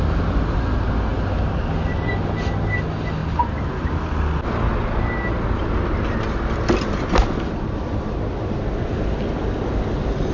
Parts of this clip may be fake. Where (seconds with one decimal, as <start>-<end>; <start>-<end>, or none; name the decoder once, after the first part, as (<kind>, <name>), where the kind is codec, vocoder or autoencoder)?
none

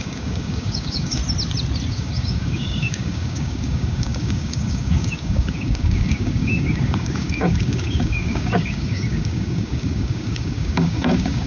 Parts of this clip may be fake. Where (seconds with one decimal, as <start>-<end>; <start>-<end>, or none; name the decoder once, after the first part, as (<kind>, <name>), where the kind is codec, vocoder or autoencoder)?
0.0-1.2 (codec, DAC); 1.9-11.5

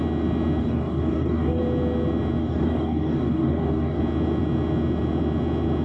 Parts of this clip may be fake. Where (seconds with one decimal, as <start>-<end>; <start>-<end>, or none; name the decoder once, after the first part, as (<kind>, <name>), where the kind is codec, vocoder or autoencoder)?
0.6-1.6 (codec, DAC); 2.4-4.0

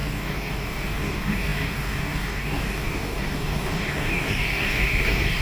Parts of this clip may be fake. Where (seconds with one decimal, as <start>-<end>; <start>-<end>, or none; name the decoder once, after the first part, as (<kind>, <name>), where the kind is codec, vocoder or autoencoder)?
0.0-5.4 (codec, DAC)

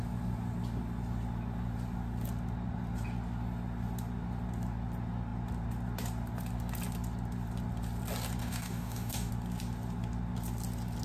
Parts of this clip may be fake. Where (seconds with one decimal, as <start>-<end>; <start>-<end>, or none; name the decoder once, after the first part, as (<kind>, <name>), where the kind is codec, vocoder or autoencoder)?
8.4-9.3 (codec, DAC)